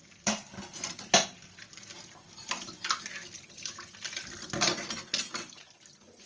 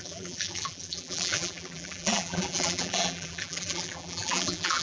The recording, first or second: first